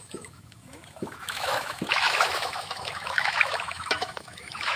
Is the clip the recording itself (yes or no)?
no